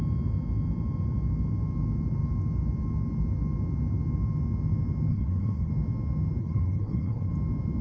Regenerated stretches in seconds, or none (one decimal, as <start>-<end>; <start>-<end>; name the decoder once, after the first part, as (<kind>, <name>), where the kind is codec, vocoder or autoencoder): 5.1-5.7 (codec, SNAC); 6.4-7.3